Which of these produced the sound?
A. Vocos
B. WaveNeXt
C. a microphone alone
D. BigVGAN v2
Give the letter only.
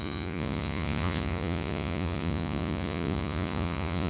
A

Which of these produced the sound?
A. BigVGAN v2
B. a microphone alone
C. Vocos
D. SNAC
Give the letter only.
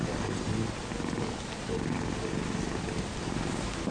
B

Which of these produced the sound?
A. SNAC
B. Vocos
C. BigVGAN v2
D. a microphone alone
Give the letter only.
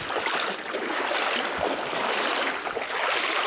D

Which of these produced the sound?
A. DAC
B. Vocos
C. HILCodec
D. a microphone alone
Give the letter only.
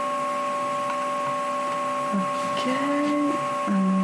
D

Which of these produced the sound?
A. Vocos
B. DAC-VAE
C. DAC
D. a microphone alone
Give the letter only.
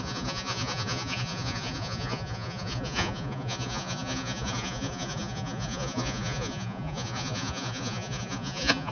A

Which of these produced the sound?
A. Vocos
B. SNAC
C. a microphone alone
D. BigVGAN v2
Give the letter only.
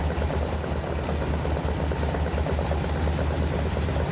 C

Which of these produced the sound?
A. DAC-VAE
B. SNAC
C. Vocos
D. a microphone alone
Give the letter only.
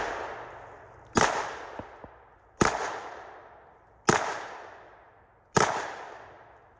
D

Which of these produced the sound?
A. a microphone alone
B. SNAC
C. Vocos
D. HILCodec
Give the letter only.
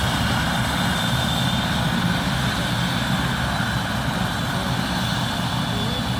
A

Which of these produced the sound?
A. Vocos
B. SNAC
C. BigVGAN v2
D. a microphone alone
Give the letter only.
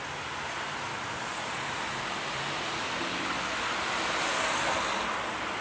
D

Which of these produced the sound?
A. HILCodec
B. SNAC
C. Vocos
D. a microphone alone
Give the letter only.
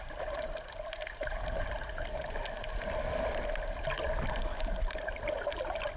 D